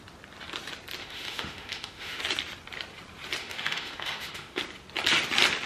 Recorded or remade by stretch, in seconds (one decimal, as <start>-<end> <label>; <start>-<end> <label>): 0.0-1.0 recorded; 1.0-2.2 remade; 2.2-3.4 recorded; 3.4-4.6 remade; 4.6-5.7 recorded